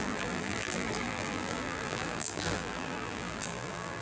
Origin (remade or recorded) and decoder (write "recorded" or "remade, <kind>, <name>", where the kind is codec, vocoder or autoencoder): remade, vocoder, BigVGAN v2